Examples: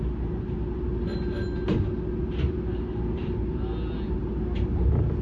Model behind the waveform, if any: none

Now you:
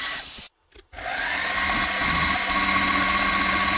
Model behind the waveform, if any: none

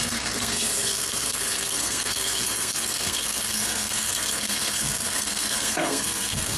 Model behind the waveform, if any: codec, SNAC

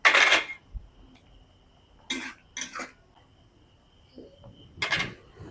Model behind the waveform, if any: none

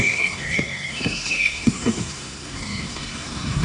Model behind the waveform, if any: codec, SNAC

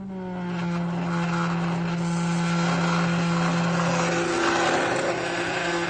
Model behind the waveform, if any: none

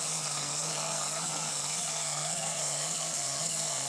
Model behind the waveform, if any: codec, SNAC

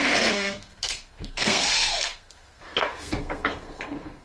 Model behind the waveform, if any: codec, SNAC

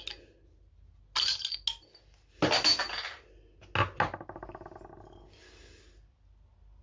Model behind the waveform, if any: none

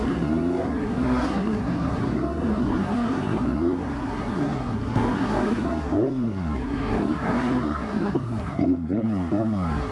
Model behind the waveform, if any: codec, SNAC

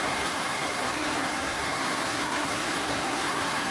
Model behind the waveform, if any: codec, SNAC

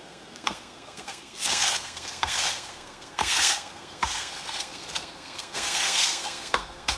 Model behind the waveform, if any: codec, SNAC